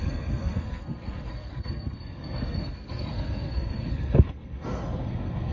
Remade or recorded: remade